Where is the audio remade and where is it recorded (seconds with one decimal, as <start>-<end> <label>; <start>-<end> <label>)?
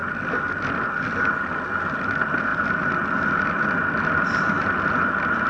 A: 0.0-5.5 recorded